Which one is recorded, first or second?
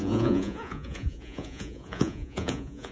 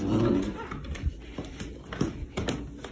second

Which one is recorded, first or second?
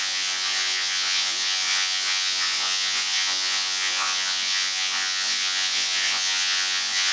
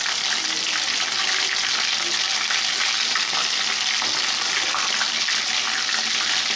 second